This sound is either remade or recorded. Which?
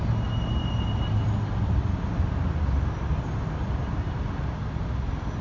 recorded